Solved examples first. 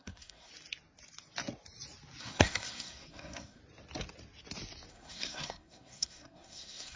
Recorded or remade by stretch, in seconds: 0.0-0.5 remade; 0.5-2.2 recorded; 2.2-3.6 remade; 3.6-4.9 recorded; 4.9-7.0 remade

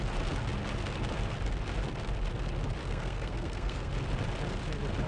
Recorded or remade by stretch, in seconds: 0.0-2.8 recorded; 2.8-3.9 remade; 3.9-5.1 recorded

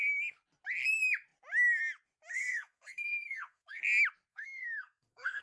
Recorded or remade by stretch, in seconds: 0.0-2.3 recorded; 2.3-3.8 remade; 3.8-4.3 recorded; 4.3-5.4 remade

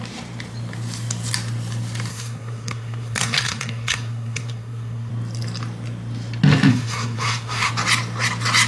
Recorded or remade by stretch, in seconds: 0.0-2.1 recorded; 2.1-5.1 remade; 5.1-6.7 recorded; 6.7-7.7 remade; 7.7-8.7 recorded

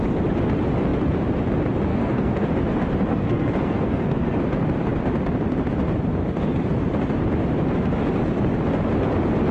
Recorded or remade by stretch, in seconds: 0.0-1.9 recorded; 1.9-2.5 remade; 2.5-3.1 recorded; 3.1-4.4 remade; 4.4-9.5 recorded

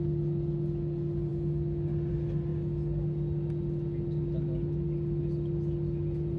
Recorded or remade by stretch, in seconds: 0.0-6.4 recorded

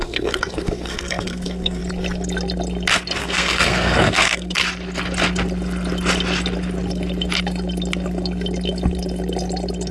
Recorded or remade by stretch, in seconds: 0.0-1.8 remade; 1.8-3.2 recorded; 3.2-4.6 remade; 4.6-9.9 recorded